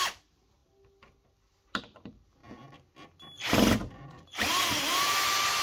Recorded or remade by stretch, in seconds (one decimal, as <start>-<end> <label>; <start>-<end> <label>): 0.0-5.6 recorded